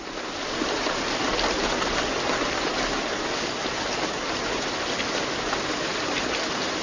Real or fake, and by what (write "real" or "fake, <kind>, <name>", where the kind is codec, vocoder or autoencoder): real